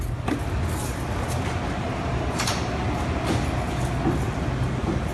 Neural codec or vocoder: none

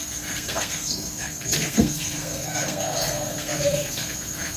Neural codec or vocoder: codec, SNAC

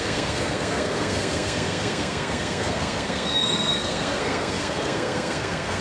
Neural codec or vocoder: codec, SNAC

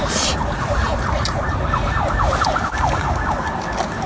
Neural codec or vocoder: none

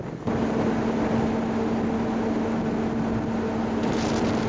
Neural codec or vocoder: none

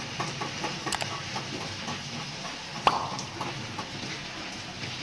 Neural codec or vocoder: none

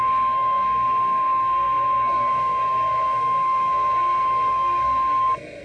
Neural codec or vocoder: codec, SNAC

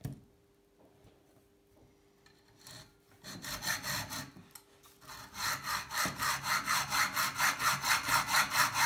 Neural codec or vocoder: none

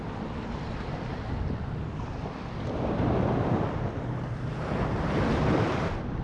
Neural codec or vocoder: none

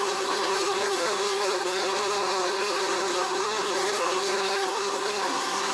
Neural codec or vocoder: codec, SNAC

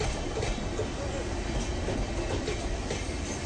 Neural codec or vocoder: none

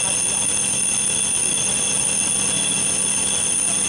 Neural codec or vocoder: none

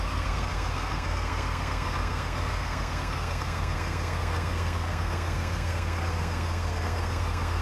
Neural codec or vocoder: codec, SNAC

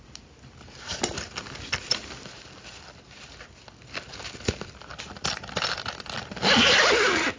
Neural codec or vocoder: none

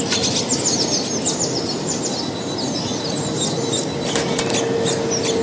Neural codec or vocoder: none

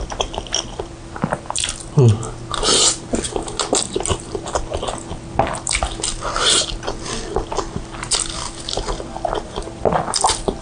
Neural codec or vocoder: none